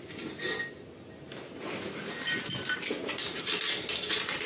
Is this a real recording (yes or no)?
yes